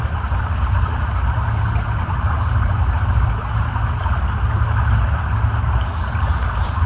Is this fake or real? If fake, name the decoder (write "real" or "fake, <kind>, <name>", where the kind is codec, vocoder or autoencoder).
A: real